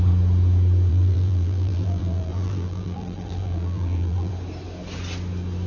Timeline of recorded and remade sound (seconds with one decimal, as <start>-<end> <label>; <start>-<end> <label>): 0.0-0.9 recorded; 0.9-4.3 remade; 4.3-5.7 recorded